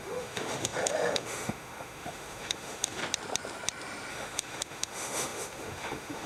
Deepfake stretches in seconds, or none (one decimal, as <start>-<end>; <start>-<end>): 0.0-3.0; 4.1-6.3